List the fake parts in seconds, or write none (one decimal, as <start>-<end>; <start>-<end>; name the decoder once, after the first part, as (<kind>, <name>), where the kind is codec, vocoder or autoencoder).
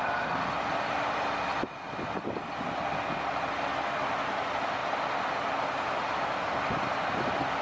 none